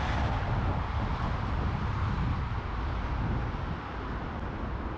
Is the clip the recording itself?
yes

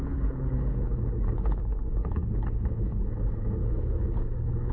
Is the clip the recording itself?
no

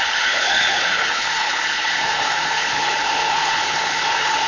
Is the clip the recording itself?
no